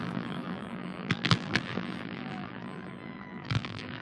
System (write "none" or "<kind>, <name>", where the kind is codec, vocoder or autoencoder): vocoder, BigVGAN v2